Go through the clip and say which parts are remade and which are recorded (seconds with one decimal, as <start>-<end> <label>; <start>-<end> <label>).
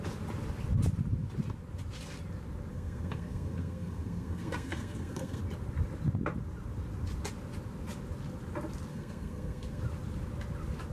0.0-2.7 recorded; 2.7-5.4 remade; 5.4-8.9 recorded; 8.9-9.8 remade; 9.8-10.9 recorded